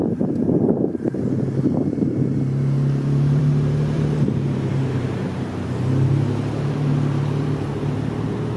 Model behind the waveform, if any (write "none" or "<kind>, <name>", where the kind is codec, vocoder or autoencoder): vocoder, BigVGAN v2